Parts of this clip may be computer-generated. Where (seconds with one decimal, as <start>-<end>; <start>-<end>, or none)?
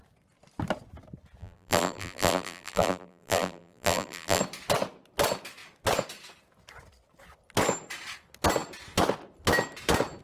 1.4-4.4